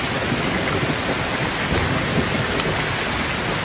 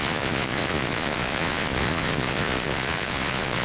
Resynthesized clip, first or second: second